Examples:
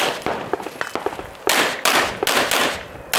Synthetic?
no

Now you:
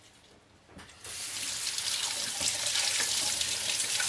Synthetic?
no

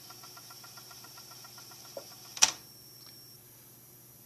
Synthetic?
yes